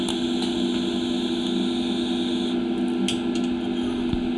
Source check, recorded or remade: recorded